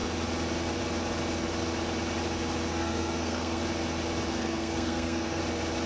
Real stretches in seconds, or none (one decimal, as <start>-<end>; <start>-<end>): 0.0-2.7; 3.6-4.3; 5.4-5.9